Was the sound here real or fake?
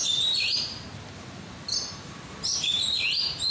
real